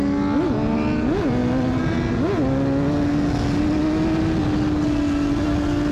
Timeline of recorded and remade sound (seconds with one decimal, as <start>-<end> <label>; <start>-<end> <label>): 0.0-5.9 recorded